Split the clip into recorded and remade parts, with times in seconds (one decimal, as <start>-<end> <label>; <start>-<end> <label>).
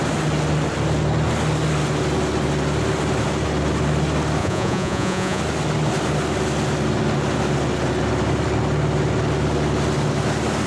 0.0-4.4 recorded; 4.4-5.4 remade; 5.4-10.7 recorded